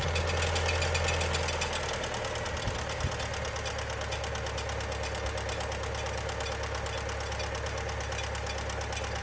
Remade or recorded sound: recorded